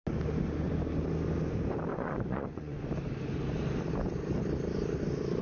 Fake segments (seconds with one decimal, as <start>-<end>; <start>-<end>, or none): 1.9-2.9